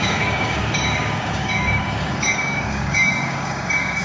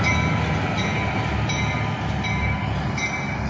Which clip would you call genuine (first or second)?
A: second